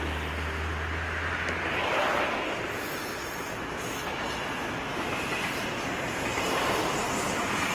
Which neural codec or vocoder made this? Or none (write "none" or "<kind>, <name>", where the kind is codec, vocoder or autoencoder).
none